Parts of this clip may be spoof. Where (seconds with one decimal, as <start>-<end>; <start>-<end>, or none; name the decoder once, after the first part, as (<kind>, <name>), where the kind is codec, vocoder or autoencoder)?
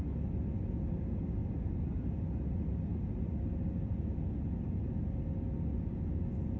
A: 1.4-2.1 (vocoder, BigVGAN v2)